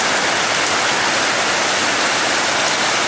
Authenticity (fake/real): real